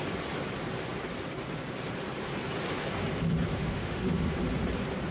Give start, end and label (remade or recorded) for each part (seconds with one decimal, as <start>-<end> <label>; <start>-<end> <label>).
0.0-3.5 recorded; 3.5-4.4 remade; 4.4-5.1 recorded